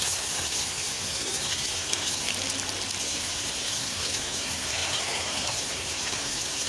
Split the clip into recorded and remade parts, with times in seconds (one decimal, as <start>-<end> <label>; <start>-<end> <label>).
0.0-2.3 remade; 2.3-3.0 recorded; 3.0-6.7 remade